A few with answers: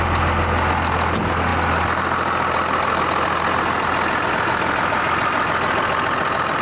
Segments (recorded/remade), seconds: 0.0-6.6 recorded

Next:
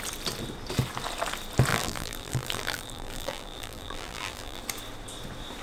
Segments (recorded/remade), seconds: 0.0-1.7 recorded; 1.7-4.6 remade; 4.6-5.6 recorded

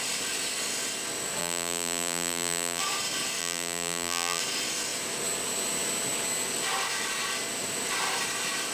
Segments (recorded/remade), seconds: 0.0-1.4 recorded; 1.4-2.8 remade; 2.8-3.4 recorded; 3.4-4.4 remade; 4.4-8.7 recorded

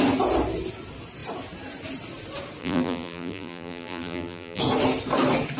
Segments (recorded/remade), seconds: 0.0-2.6 recorded; 2.6-4.6 remade; 4.6-5.6 recorded